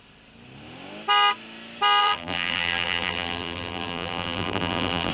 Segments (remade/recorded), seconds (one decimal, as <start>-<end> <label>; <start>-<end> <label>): 0.0-2.0 recorded; 2.0-5.1 remade